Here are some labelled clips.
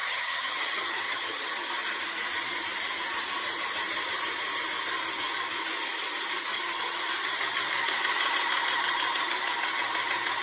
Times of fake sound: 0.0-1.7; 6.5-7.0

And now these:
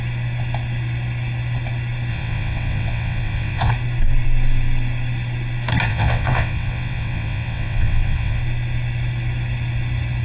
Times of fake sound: 2.1-3.7; 5.9-8.4

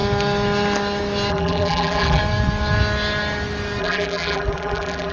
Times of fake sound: 1.3-2.2; 3.8-5.1

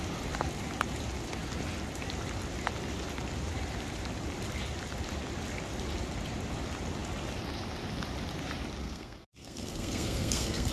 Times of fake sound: 8.8-10.7

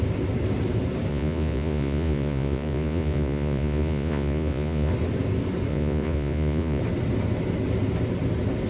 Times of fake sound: 1.1-4.9; 5.7-6.8

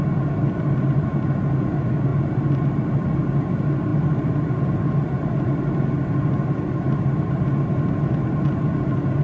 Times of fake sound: none

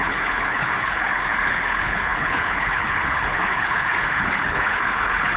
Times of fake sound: 0.0-5.4